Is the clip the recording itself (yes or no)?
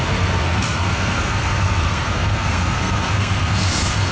no